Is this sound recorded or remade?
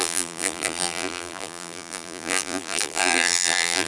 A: remade